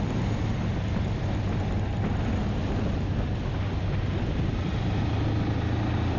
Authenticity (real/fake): real